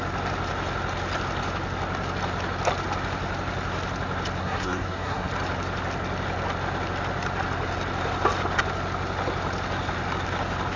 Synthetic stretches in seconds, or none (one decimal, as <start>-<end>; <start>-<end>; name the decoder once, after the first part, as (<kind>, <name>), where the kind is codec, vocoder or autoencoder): 4.4-5.3 (codec, SNAC)

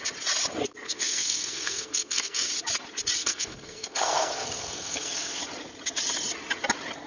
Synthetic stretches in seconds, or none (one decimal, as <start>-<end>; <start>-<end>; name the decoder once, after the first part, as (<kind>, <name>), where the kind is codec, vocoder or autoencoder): 0.8-2.5 (codec, SNAC); 3.2-5.4

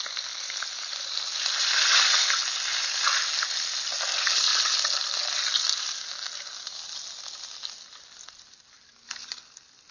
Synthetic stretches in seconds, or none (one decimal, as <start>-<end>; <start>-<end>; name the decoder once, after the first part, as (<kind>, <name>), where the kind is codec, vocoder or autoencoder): none

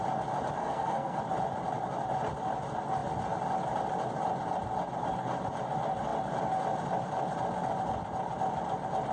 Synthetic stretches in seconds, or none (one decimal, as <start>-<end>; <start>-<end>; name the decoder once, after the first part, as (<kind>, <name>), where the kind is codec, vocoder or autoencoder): 0.6-1.2 (codec, SNAC)

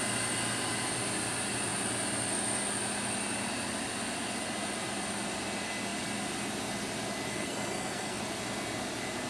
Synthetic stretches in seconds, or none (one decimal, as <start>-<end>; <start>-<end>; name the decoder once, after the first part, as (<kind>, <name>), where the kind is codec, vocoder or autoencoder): 7.3-8.2 (codec, SNAC)